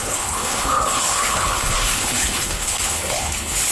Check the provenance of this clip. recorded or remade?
remade